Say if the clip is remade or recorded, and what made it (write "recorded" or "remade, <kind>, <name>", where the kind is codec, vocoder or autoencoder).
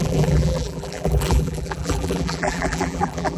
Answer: remade, vocoder, BigVGAN v2